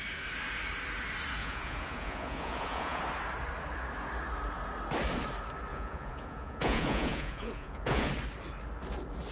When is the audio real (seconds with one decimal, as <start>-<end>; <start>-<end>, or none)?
0.0-1.4; 3.0-5.7; 8.1-9.3